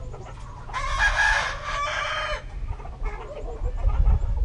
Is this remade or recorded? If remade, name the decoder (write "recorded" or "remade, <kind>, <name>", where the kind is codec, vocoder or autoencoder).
recorded